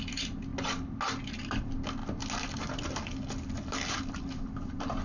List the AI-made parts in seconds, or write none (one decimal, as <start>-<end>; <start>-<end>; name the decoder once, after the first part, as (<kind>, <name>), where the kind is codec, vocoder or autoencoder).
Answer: none